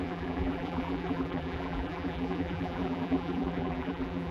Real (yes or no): no